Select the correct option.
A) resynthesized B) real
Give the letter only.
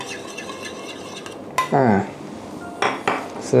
B